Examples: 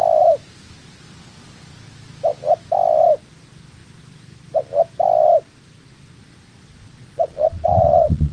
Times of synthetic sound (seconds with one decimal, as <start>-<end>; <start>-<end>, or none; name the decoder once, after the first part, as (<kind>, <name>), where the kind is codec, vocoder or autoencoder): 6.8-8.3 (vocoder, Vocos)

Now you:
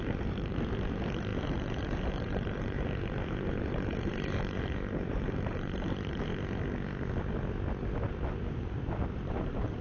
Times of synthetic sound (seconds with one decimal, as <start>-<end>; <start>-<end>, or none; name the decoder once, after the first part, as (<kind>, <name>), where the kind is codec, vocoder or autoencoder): 0.0-6.3 (vocoder, BigVGAN v2); 8.5-9.8

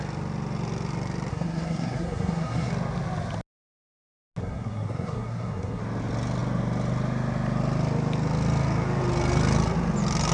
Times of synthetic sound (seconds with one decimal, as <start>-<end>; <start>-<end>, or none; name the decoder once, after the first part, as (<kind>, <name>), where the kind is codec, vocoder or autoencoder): 1.3-2.7 (codec, SNAC); 4.4-5.8

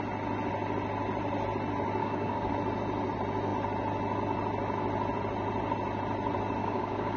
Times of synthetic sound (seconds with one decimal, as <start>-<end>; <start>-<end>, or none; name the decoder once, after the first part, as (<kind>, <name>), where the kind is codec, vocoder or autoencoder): 2.0-2.5 (codec, DAC); 6.6-7.2

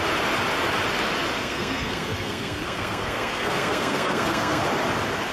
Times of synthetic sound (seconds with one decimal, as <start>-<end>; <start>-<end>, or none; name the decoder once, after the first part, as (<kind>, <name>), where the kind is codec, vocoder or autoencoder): 1.4-4.6 (codec, SNAC)